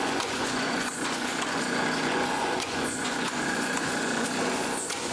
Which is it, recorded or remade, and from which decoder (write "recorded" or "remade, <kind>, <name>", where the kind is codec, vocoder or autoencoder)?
remade, vocoder, Vocos